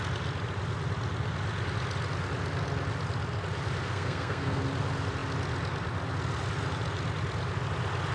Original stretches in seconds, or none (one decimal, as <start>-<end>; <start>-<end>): 0.0-3.9; 4.6-8.1